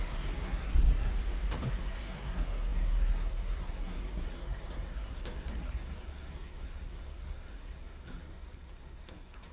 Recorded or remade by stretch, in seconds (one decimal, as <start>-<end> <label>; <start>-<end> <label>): 0.0-1.1 remade; 1.1-1.7 recorded; 1.7-9.5 remade